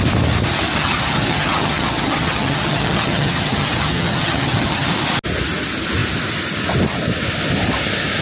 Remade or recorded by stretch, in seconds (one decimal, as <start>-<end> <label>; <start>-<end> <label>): 0.0-0.7 recorded; 0.7-4.9 remade; 4.9-8.2 recorded